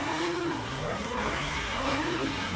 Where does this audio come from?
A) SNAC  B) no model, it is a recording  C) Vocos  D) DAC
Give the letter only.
A